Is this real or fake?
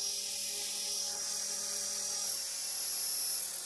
real